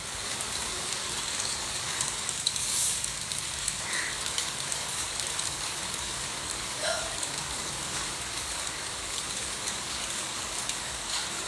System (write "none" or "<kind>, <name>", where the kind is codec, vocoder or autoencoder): codec, DAC